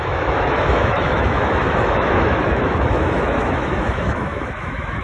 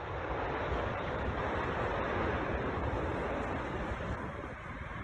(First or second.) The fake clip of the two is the first